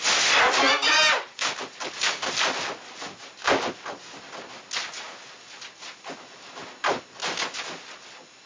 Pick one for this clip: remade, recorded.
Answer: recorded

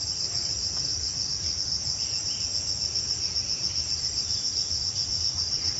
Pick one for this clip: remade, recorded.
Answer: recorded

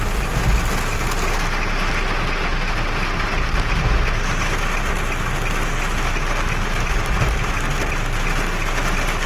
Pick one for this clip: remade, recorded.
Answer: recorded